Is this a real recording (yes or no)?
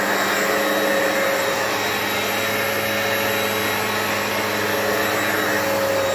yes